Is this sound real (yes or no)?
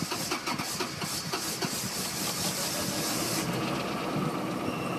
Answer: yes